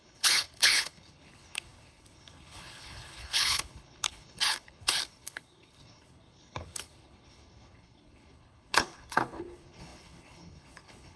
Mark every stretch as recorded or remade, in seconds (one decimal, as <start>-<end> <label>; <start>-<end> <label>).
0.0-11.2 remade